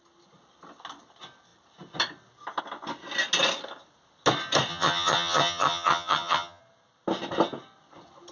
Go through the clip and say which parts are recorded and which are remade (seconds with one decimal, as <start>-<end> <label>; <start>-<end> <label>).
0.0-4.7 recorded; 4.7-6.6 remade; 6.6-8.3 recorded